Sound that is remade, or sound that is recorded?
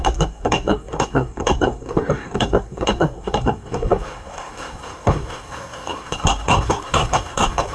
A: remade